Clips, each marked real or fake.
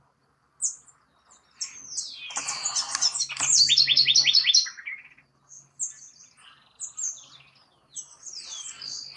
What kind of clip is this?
real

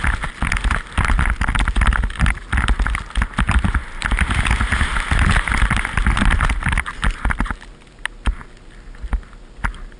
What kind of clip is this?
real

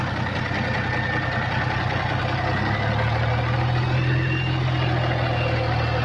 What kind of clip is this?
real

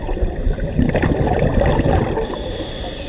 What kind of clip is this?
real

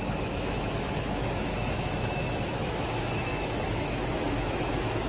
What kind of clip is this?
fake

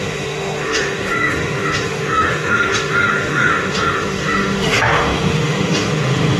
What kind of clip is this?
fake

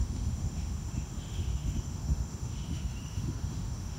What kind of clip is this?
fake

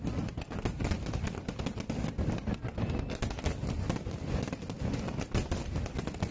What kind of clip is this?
real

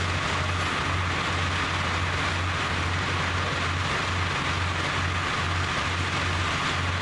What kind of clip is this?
real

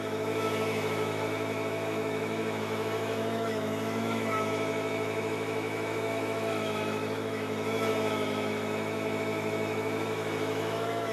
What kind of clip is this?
fake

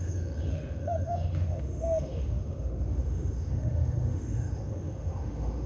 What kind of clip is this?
fake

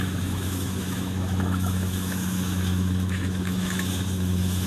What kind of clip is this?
fake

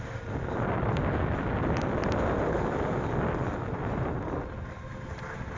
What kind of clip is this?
real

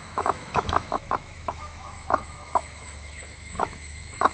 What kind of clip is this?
fake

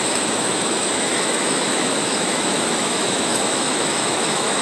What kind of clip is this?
fake